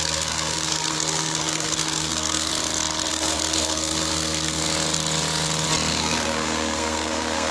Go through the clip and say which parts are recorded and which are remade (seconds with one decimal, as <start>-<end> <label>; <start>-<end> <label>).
0.0-2.5 remade; 2.5-3.1 recorded; 3.1-4.6 remade; 4.6-5.9 recorded; 5.9-7.5 remade